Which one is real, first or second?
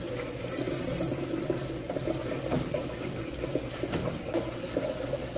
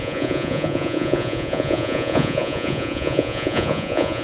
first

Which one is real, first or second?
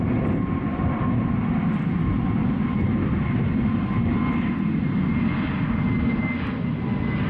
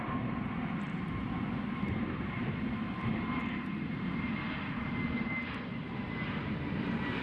first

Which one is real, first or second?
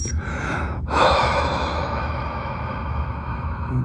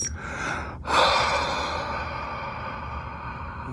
second